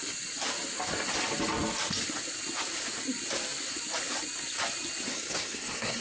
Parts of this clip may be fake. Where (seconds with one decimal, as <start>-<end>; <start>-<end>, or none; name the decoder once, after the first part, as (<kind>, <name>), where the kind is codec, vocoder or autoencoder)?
5.1-6.0 (codec, SNAC)